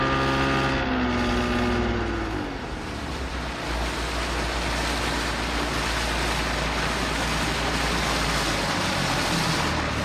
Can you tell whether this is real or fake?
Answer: real